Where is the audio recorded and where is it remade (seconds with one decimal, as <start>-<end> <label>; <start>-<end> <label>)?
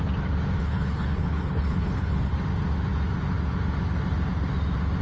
0.0-0.6 recorded; 0.6-2.3 remade; 2.3-5.0 recorded